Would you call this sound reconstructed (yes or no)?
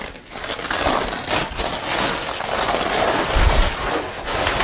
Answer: no